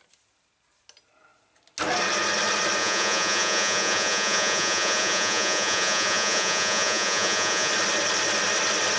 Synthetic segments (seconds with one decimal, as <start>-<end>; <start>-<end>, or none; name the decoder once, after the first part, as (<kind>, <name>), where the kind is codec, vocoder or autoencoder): 2.8-7.7 (vocoder, Vocos)